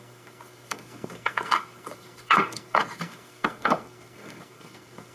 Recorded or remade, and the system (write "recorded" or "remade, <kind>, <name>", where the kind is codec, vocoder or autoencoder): remade, codec, SNAC